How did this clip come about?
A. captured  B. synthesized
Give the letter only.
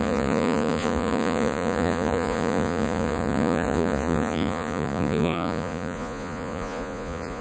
B